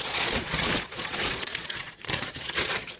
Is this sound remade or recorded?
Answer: remade